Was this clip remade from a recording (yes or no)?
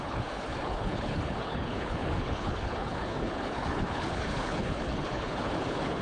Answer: yes